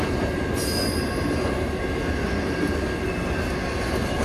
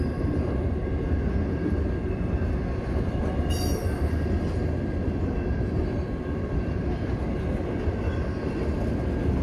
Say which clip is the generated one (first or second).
second